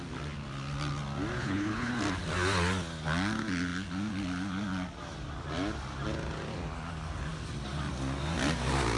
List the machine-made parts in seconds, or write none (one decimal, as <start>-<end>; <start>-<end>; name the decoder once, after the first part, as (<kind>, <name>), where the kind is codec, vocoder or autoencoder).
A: 1.4-1.9 (codec, HILCodec)